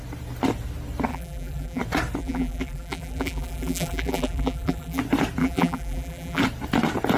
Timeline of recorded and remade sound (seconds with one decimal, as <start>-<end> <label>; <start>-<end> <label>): 0.0-1.1 recorded; 1.1-1.8 remade; 1.8-2.2 recorded; 2.2-5.0 remade; 5.0-5.4 recorded; 5.4-6.4 remade; 6.4-7.2 recorded